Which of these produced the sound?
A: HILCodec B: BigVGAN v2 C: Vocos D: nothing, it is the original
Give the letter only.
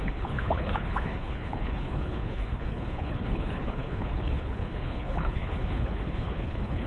A